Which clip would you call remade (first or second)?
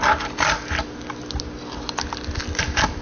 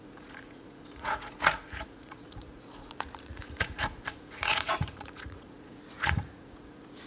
second